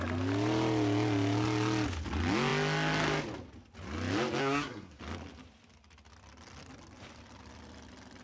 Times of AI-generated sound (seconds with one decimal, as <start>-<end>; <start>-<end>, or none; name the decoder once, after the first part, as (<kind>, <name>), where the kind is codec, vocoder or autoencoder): 4.4-5.0 (codec, SNAC)